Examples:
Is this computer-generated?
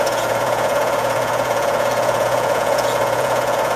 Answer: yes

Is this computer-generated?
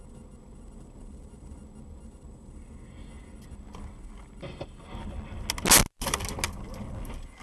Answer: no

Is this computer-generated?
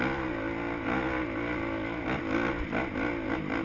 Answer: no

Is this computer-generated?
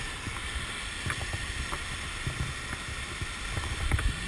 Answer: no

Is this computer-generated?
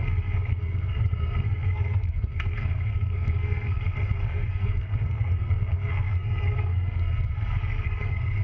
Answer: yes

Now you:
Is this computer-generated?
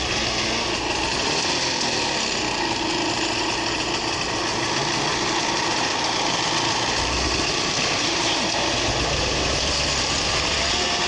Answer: no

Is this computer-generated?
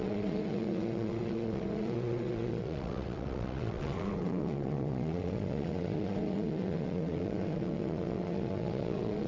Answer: yes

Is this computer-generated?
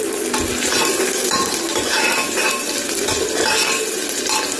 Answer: no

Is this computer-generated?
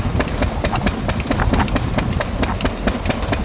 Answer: no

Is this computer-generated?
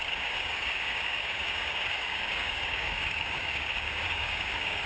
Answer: yes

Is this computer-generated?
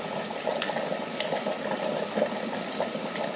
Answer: no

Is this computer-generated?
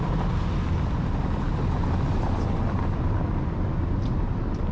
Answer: no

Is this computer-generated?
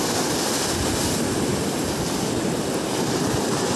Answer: no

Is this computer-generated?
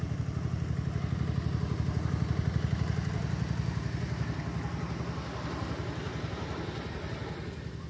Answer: no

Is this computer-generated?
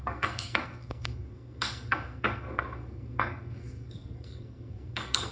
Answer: yes